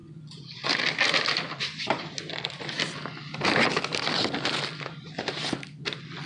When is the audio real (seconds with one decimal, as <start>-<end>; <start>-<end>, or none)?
0.0-6.3